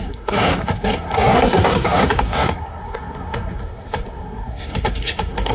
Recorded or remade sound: remade